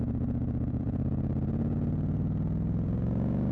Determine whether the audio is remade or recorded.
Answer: remade